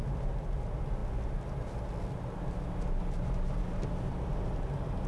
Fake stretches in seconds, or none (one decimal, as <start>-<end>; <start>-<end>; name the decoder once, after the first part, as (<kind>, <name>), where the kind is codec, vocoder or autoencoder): none